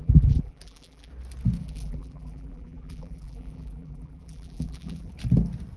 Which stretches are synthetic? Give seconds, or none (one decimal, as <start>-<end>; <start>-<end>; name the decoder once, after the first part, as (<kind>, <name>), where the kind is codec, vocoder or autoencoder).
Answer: 0.0-1.1 (vocoder, BigVGAN v2); 1.6-5.1